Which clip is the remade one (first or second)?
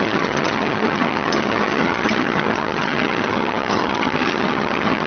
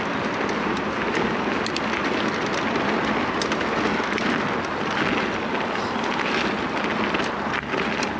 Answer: first